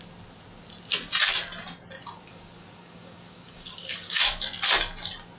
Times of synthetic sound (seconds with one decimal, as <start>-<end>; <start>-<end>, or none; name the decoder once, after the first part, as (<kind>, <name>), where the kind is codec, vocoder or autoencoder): 2.3-4.2 (codec, DAC)